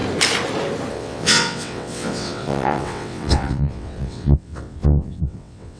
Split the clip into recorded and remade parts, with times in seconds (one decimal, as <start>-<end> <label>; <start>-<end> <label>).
0.0-0.9 recorded; 0.9-5.8 remade